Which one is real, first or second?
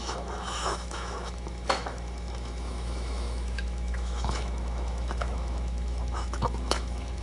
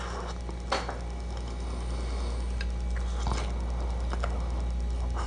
second